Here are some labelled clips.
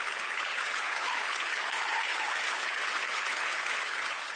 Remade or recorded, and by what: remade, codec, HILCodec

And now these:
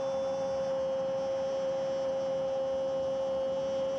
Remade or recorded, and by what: recorded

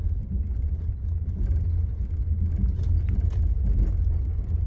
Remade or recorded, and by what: recorded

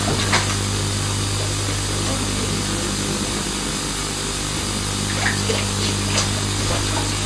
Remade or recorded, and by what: recorded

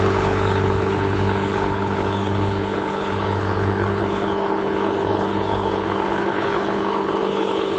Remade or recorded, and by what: remade, codec, HILCodec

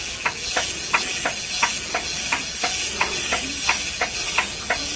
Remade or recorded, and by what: recorded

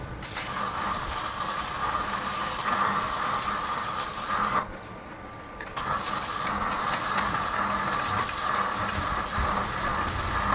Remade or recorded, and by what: recorded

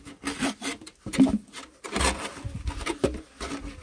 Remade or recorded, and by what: recorded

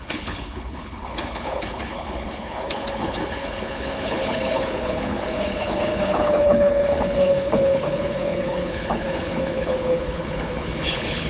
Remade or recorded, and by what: remade, codec, HILCodec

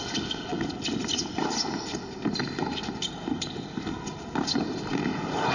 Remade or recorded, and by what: recorded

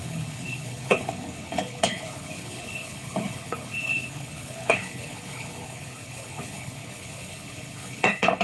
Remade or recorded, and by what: remade, codec, HILCodec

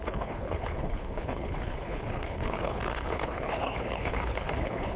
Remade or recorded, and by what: remade, codec, HILCodec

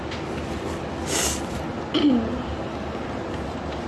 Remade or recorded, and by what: recorded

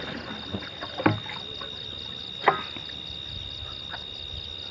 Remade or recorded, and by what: recorded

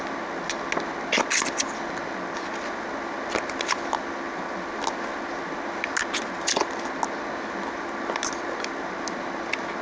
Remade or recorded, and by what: recorded